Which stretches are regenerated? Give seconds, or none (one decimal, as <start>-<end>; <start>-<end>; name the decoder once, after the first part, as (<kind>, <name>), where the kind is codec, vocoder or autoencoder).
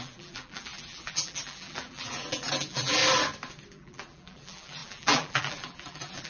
0.0-3.0 (vocoder, BigVGAN v2); 3.7-6.3